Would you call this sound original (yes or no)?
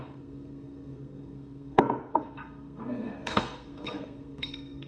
no